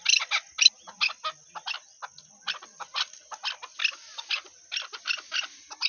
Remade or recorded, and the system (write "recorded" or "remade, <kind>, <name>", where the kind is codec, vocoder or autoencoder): recorded